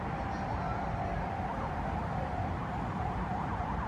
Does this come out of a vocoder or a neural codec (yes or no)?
no